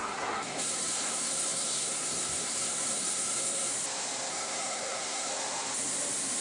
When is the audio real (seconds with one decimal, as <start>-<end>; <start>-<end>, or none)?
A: 3.7-4.3; 5.3-6.4